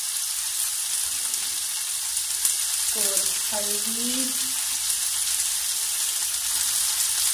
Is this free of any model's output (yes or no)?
yes